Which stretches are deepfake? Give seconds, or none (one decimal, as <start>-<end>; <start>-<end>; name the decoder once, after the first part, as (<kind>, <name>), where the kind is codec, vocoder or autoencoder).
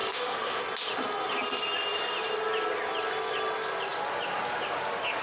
0.0-0.6 (autoencoder, DAC-VAE)